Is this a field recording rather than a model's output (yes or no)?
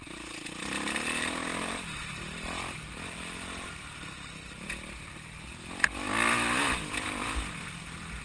yes